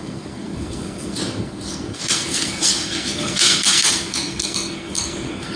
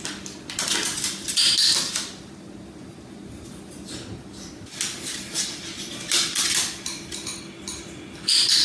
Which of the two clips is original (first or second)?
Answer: second